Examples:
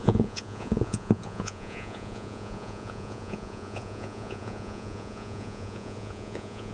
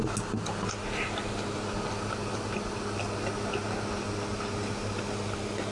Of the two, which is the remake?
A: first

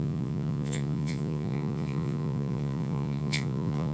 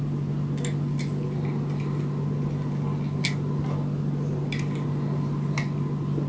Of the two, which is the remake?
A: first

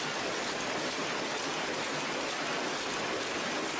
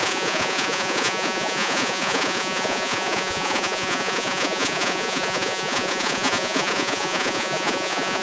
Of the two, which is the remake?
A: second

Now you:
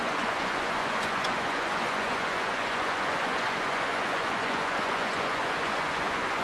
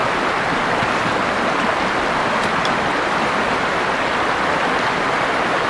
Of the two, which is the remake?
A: first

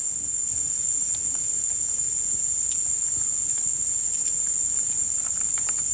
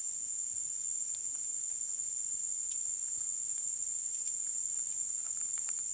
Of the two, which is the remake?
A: second